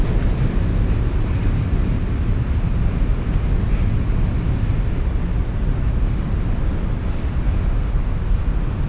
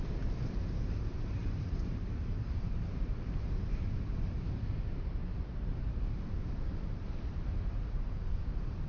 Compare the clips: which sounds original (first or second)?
first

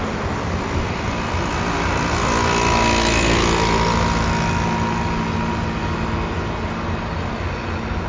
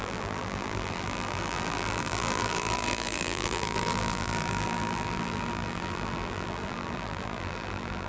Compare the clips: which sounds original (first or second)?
first